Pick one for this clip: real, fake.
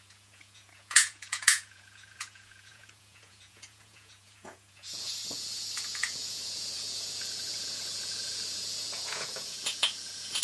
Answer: fake